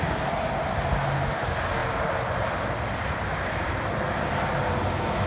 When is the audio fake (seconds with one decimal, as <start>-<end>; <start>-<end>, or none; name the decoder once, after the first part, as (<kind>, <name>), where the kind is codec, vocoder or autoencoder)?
none